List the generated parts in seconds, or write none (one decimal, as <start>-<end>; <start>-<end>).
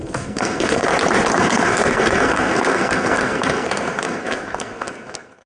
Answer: 0.0-0.9; 1.4-5.5